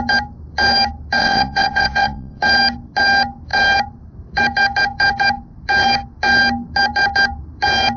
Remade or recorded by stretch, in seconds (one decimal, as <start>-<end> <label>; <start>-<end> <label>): 0.0-1.2 recorded; 1.2-2.4 remade; 2.4-8.0 recorded